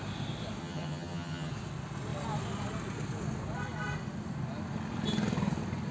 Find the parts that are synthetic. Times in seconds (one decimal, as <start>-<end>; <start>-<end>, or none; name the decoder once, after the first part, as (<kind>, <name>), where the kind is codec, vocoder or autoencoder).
0.6-1.5 (vocoder, HiFi-GAN)